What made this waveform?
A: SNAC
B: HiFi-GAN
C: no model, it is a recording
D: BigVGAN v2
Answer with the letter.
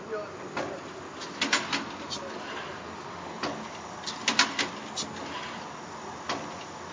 C